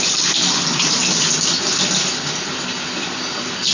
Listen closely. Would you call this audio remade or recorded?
recorded